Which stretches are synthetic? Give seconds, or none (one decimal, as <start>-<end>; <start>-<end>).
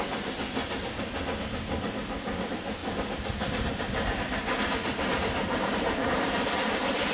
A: 2.8-7.1